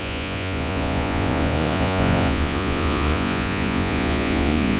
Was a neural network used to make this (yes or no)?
yes